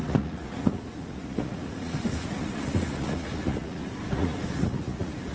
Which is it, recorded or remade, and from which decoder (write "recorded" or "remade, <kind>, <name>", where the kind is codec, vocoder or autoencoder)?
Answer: remade, vocoder, Vocos